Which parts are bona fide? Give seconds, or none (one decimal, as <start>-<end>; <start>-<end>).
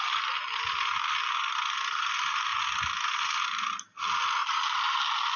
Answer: 0.0-5.4